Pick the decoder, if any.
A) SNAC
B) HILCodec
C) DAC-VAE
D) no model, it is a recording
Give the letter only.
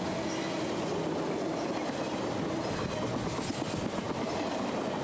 D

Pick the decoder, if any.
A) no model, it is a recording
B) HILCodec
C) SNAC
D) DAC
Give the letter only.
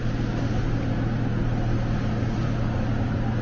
A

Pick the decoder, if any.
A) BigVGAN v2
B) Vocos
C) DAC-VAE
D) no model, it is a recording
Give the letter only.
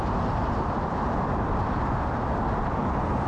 D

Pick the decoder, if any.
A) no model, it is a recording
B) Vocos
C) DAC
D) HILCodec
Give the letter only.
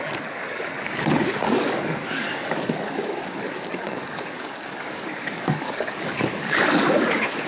C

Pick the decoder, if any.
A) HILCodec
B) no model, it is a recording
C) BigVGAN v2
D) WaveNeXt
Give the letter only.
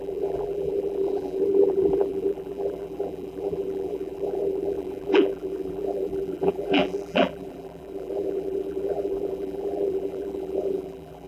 C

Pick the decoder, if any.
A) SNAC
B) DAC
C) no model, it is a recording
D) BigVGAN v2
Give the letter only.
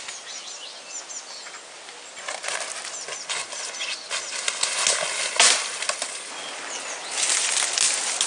C